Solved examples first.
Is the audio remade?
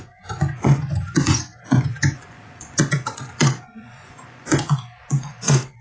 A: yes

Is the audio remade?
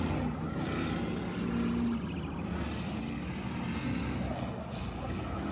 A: no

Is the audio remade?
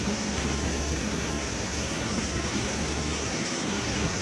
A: yes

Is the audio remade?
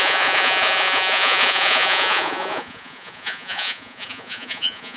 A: yes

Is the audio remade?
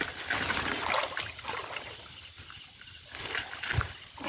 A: no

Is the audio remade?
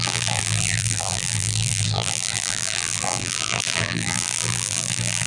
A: yes